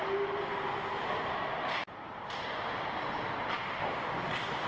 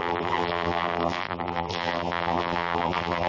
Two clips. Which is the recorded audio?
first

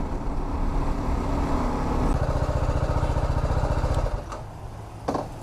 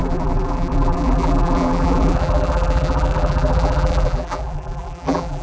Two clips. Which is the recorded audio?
first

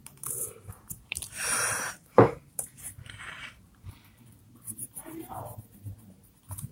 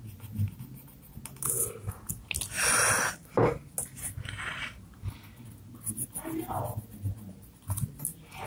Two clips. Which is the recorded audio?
second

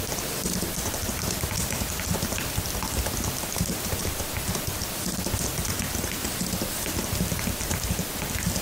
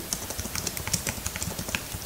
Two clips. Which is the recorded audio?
second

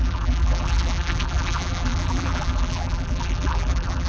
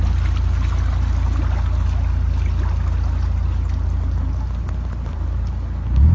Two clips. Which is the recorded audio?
second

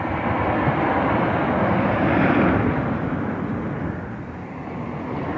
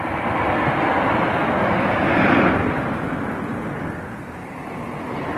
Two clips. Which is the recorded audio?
second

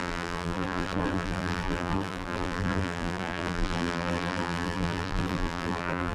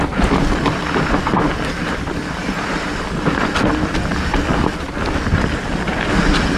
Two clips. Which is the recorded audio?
second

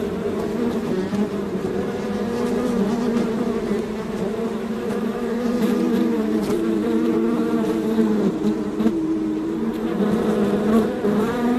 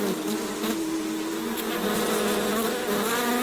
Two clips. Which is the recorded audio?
second